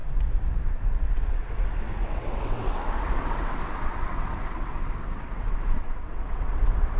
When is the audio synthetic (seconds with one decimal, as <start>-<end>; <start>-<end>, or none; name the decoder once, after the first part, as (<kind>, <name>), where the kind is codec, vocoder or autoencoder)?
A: 0.7-7.0 (vocoder, WaveNeXt)